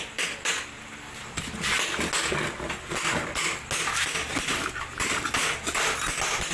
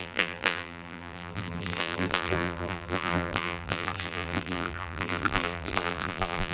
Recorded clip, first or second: first